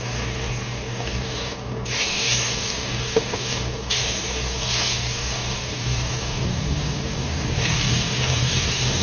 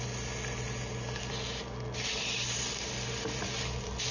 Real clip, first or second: second